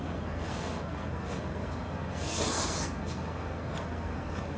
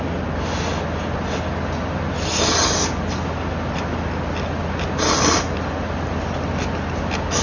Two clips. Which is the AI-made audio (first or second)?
first